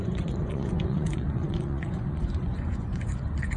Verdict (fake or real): fake